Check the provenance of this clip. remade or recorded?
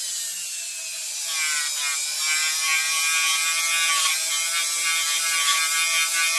recorded